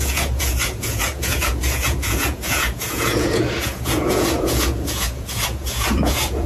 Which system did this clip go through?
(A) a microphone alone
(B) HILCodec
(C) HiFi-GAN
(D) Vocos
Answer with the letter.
D